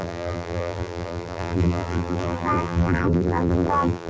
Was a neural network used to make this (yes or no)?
yes